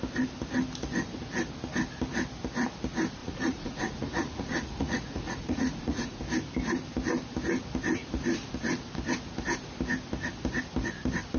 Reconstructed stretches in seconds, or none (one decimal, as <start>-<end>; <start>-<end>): 3.2-6.2